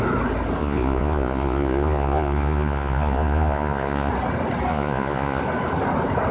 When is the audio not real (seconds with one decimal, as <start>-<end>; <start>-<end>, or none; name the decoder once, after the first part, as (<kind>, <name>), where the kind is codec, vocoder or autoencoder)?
0.6-4.1 (vocoder, Vocos); 4.7-5.4